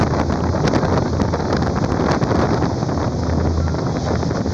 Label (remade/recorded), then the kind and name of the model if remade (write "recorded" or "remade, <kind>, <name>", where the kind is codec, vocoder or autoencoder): recorded